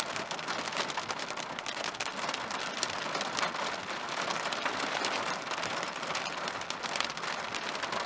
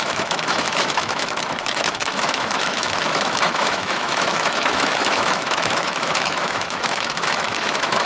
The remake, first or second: second